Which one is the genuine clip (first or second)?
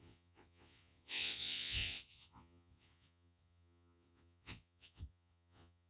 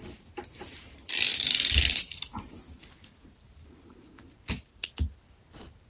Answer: second